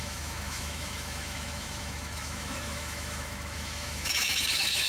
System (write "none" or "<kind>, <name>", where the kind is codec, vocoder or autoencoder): autoencoder, DAC-VAE